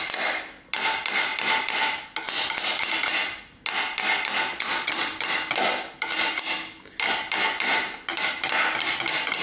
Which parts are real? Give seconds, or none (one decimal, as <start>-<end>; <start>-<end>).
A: 0.0-4.5; 5.1-9.4